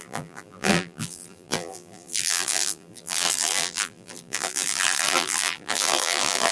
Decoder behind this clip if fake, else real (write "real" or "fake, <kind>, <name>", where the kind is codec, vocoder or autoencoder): fake, vocoder, BigVGAN v2